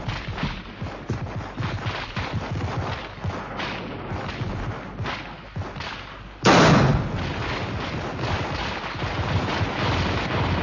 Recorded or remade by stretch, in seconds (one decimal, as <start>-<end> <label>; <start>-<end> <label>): 0.0-10.6 recorded